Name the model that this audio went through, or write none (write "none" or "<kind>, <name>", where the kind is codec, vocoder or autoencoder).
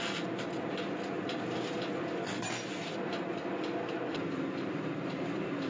none